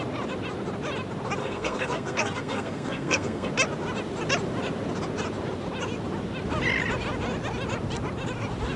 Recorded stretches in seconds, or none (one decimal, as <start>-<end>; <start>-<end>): 0.0-1.4; 3.5-8.8